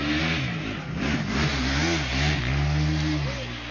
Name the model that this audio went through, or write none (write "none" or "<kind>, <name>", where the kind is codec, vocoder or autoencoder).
none